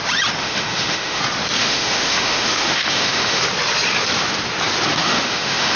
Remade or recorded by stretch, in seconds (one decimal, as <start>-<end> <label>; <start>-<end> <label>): 0.0-0.4 recorded; 0.4-1.2 remade; 1.2-1.6 recorded; 1.6-3.4 remade; 3.4-5.0 recorded; 5.0-5.8 remade